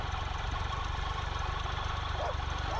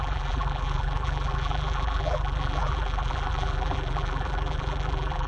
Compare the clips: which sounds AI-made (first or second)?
second